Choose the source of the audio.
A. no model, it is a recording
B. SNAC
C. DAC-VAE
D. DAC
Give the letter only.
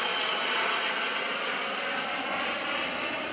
A